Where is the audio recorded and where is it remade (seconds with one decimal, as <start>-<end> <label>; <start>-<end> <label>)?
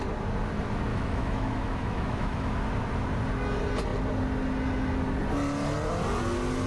0.0-0.9 recorded; 0.9-2.5 remade; 2.5-6.7 recorded